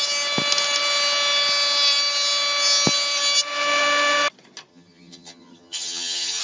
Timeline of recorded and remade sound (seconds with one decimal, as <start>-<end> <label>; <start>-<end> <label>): 0.0-4.7 recorded; 4.7-6.4 remade

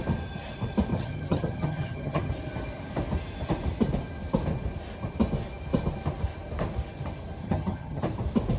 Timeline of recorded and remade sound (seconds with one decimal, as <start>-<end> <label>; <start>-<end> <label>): 0.0-0.9 recorded; 0.9-2.3 remade; 2.3-7.4 recorded; 7.4-8.0 remade; 8.0-8.6 recorded

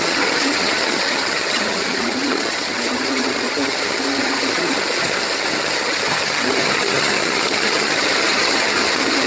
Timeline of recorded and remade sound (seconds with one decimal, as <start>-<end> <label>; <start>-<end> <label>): 0.0-9.3 remade

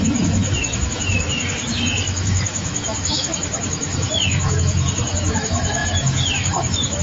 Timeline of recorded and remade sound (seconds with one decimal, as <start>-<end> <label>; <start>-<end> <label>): 0.0-7.0 remade

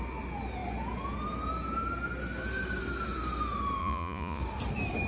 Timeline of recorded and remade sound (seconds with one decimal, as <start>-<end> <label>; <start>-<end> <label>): 0.0-3.8 recorded; 3.8-4.4 remade; 4.4-5.1 recorded

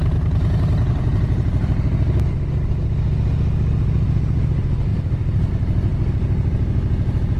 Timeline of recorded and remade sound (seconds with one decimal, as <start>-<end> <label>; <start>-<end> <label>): 0.0-0.7 recorded; 0.7-2.9 remade; 2.9-4.9 recorded; 4.9-5.5 remade; 5.5-7.4 recorded